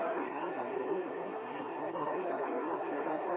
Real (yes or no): no